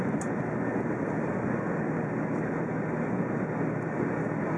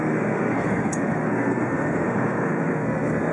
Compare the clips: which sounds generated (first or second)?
second